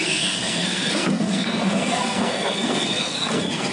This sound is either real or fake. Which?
fake